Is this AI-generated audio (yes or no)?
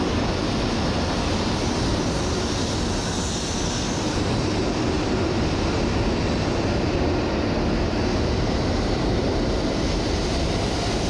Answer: no